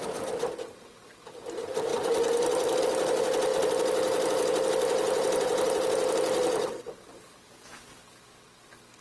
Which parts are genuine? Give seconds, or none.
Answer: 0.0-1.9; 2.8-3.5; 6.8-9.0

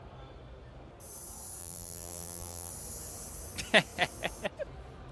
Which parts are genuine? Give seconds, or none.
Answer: 0.0-1.6; 2.7-5.1